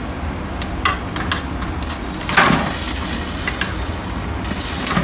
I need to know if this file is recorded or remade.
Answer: recorded